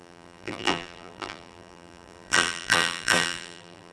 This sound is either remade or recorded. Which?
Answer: remade